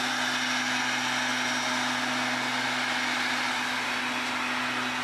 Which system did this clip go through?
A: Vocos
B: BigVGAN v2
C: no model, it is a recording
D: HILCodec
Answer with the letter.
C